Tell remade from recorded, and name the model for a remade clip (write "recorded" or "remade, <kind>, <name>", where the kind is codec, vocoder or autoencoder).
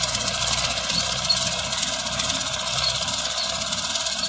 recorded